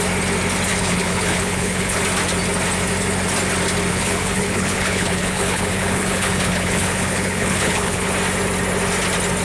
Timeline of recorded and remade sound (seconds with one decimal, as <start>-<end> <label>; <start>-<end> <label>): 0.0-0.7 recorded; 0.7-2.0 remade; 2.0-3.9 recorded; 3.9-8.1 remade; 8.1-9.4 recorded